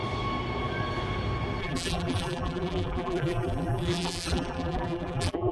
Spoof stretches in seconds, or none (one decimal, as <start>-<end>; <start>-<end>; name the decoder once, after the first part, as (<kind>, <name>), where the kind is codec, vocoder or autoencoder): 1.6-5.5 (vocoder, BigVGAN v2)